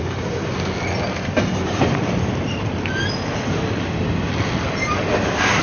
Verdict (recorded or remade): recorded